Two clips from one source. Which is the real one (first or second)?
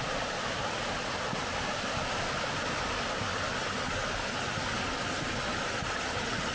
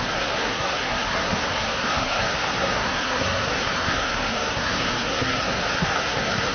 first